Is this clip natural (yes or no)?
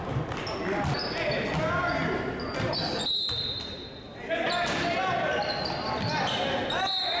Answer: yes